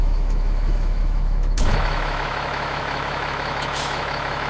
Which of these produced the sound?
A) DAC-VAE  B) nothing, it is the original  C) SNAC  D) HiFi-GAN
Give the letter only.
A